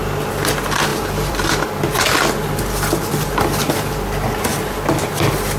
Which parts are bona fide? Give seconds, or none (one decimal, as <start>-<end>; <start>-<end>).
0.0-0.9; 1.6-2.1; 3.9-5.6